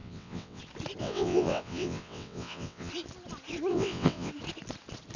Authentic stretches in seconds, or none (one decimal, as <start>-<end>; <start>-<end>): 0.6-1.0; 2.9-3.7; 4.3-5.2